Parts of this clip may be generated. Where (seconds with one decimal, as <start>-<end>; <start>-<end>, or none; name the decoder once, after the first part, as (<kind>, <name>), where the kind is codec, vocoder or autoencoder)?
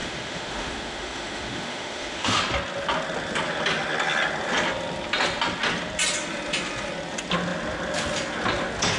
0.0-2.4 (autoencoder, DAC-VAE)